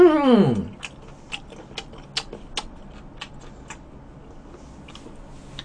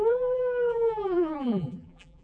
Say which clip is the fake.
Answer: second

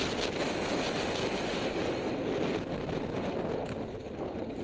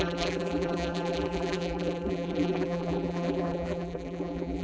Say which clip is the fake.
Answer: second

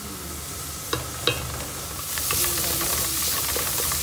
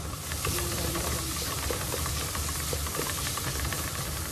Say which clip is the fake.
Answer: second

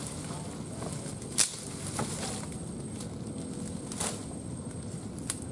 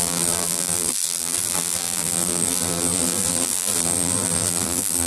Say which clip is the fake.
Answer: second